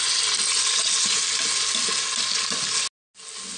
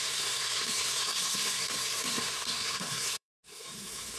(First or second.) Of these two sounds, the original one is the first